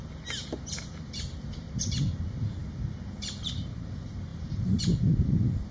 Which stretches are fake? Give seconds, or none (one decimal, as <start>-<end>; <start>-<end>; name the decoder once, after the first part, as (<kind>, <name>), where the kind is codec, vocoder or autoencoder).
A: 4.3-4.8 (vocoder, BigVGAN v2)